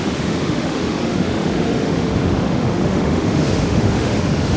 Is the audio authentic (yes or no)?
no